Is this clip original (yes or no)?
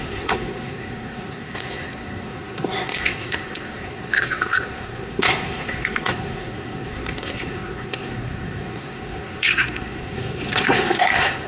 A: no